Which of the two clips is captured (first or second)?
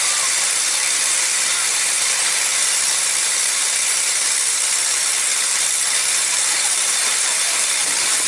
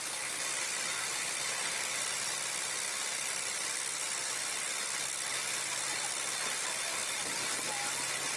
second